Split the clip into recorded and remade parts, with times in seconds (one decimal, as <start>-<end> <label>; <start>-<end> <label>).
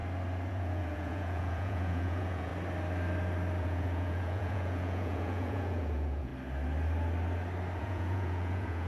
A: 0.0-0.5 recorded; 0.5-2.5 remade; 2.5-3.6 recorded; 3.6-6.3 remade; 6.3-7.8 recorded; 7.8-8.9 remade